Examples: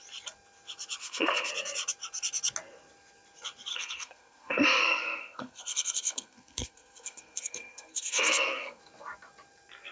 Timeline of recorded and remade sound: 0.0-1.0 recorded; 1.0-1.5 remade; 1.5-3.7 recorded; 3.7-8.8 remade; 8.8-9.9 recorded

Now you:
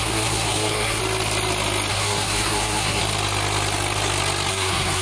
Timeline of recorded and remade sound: 0.0-1.0 remade; 1.0-1.9 recorded; 1.9-3.0 remade; 3.0-4.5 recorded; 4.5-5.0 remade

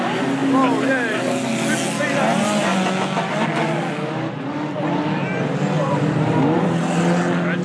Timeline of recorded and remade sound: 0.0-7.6 recorded

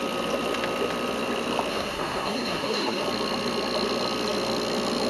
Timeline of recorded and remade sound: 0.0-1.7 recorded; 1.7-3.0 remade; 3.0-5.1 recorded

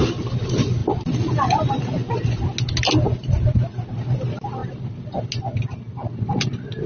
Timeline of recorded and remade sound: 0.0-6.9 recorded

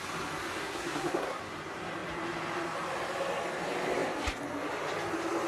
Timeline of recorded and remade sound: 0.0-0.6 recorded; 0.6-1.4 remade; 1.4-5.5 recorded